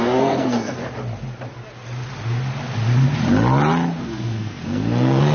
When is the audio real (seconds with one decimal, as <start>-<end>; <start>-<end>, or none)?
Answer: 0.8-4.0